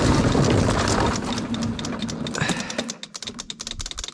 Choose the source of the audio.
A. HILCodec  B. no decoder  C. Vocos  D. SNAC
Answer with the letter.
B